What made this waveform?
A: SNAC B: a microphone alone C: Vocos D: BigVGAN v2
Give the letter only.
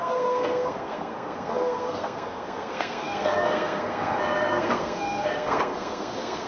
A